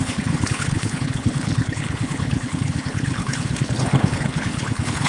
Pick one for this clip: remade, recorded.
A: remade